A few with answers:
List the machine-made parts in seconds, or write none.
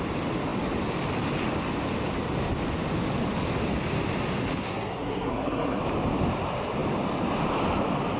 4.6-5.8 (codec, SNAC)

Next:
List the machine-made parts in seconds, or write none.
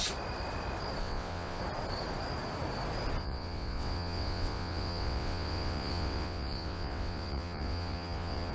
1.0-1.6 (vocoder, WaveNeXt); 3.2-8.5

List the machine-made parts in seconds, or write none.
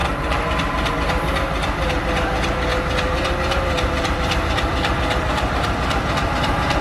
0.0-0.9 (vocoder, BigVGAN v2); 2.7-6.8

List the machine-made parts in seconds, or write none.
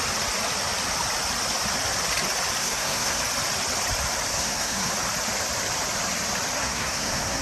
2.6-3.2 (codec, SNAC); 4.3-4.9; 6.6-7.4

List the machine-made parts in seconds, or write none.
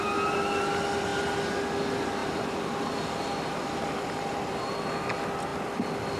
2.2-5.0 (vocoder, BigVGAN v2); 5.5-6.2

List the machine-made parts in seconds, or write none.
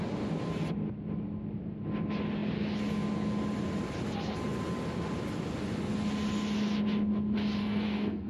7.6-8.3 (codec, SNAC)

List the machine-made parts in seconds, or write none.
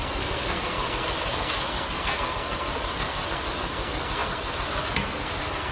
0.0-5.7 (codec, SNAC)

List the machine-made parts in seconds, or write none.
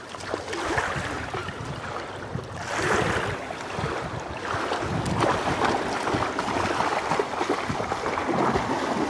none